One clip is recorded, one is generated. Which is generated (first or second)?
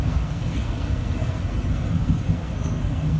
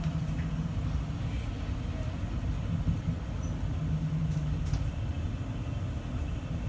first